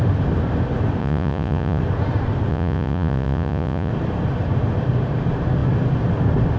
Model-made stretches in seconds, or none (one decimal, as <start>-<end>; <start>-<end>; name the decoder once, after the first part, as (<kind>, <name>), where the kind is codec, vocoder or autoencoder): 1.0-1.8 (vocoder, Vocos); 2.5-3.9

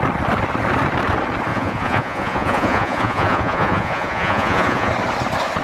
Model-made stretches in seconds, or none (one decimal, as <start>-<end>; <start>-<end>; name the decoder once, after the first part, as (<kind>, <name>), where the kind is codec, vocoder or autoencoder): 1.5-4.9 (vocoder, Vocos)

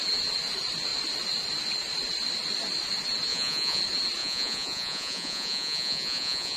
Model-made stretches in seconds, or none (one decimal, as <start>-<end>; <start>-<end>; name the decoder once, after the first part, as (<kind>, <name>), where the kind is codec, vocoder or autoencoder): 3.3-3.8 (vocoder, Vocos); 4.2-6.6